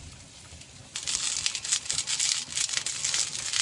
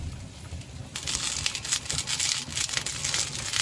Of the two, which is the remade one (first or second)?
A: first